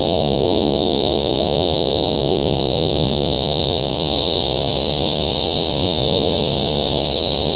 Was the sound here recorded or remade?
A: remade